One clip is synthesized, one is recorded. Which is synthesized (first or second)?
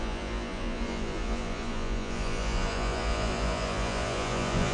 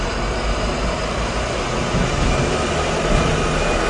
first